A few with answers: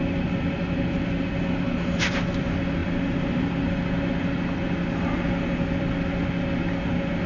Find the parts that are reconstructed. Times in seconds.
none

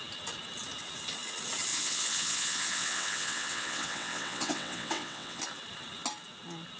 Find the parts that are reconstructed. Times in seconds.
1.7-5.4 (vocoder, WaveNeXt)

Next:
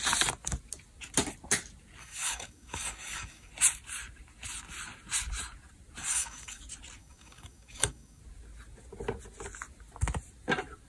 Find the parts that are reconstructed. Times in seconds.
2.0-3.5 (codec, DAC); 6.0-6.6; 7.0-8.2

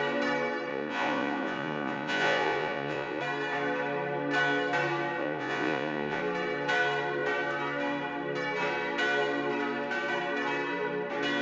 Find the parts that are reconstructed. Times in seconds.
0.7-3.2 (vocoder, Vocos); 5.2-6.2

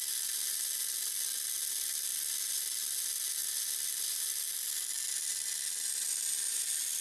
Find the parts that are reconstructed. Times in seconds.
none